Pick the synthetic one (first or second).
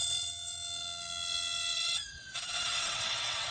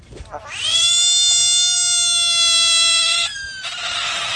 first